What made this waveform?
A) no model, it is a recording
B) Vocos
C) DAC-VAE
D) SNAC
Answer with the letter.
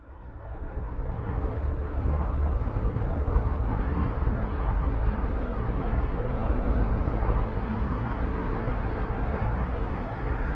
D